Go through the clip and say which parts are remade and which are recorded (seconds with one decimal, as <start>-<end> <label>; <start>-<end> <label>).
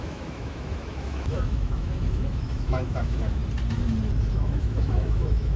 0.0-3.4 remade; 3.4-4.3 recorded; 4.3-5.6 remade